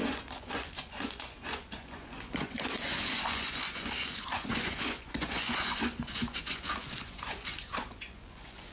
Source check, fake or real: fake